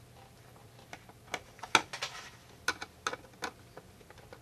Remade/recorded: recorded